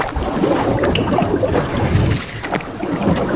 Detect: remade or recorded recorded